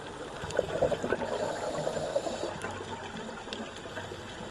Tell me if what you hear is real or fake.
real